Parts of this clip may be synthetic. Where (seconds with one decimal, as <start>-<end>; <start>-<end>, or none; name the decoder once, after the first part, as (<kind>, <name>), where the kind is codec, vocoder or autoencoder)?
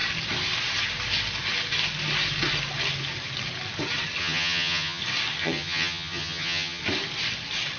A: 4.2-5.0 (vocoder, HiFi-GAN); 5.4-6.8